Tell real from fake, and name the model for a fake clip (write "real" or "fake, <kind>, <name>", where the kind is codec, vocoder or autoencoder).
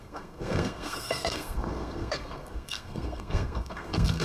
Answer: fake, codec, SNAC